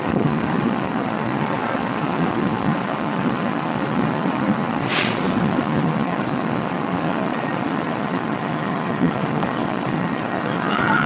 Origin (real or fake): fake